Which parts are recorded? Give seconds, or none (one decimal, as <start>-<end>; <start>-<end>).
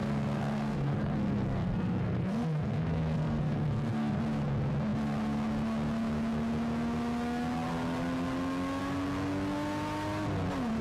4.2-10.8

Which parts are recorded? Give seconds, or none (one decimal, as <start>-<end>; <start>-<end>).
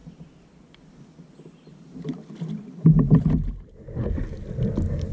0.0-5.1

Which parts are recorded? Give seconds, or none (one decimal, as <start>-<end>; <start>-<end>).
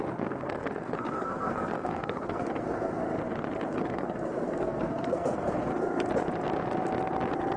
3.0-3.7; 5.7-7.6